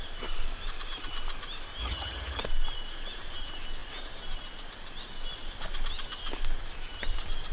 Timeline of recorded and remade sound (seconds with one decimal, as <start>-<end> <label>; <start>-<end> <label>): 0.0-1.8 recorded; 1.8-2.4 remade; 2.4-7.5 recorded